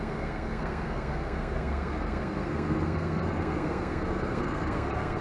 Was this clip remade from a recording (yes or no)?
yes